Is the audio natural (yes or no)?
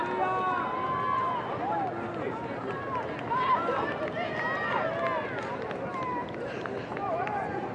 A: yes